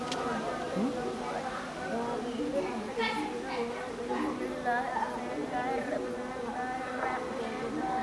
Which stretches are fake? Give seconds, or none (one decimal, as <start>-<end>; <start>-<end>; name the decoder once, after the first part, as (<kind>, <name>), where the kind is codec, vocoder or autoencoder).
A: none